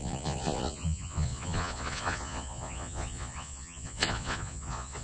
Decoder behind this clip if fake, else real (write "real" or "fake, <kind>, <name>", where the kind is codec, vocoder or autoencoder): fake, vocoder, Vocos